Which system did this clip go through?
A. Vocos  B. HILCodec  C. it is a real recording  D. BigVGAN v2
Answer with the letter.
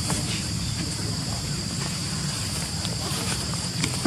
D